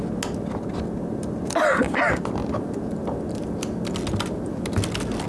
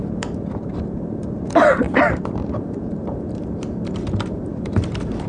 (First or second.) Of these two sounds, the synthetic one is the second